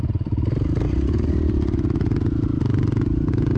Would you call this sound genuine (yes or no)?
yes